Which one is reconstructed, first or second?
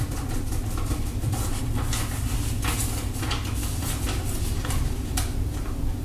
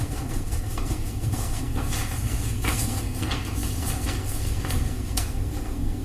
second